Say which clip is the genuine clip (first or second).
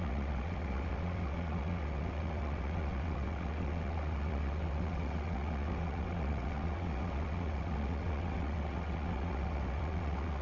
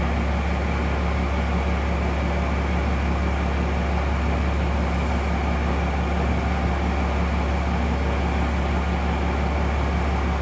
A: second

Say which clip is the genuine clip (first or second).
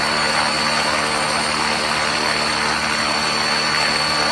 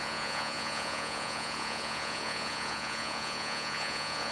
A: first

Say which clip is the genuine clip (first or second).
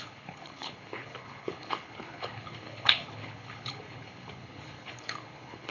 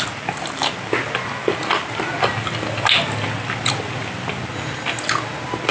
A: second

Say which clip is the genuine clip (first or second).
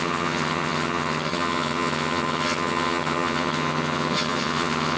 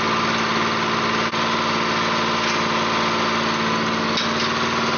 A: second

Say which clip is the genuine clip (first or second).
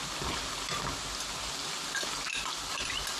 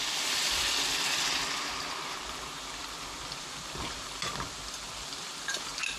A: first